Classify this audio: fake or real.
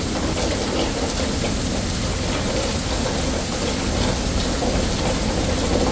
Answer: real